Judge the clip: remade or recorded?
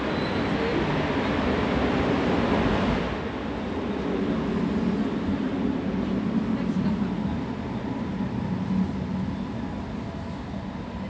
recorded